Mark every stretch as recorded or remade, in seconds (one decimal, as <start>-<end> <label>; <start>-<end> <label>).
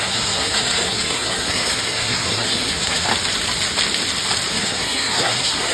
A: 0.0-3.1 remade; 3.1-4.5 recorded; 4.5-5.7 remade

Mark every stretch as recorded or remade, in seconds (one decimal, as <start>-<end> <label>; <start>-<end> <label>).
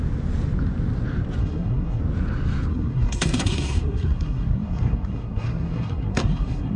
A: 0.0-1.4 recorded; 1.4-2.0 remade; 2.0-2.7 recorded; 2.7-6.8 remade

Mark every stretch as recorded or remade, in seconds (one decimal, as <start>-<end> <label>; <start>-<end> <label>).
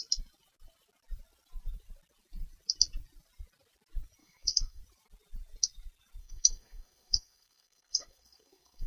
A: 0.0-4.2 recorded; 4.2-4.8 remade; 4.8-6.2 recorded; 6.2-8.9 remade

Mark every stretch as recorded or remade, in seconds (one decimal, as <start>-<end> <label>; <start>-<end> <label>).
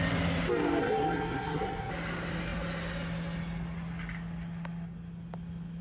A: 0.0-0.8 recorded; 0.8-1.9 remade; 1.9-5.8 recorded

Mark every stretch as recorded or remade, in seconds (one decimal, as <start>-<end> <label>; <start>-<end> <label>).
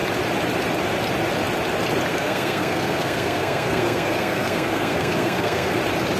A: 0.0-2.1 recorded; 2.1-5.8 remade; 5.8-6.2 recorded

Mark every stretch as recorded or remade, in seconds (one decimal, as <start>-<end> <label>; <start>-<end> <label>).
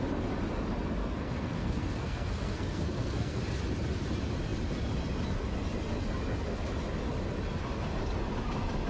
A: 0.0-1.0 recorded; 1.0-3.4 remade; 3.4-8.9 recorded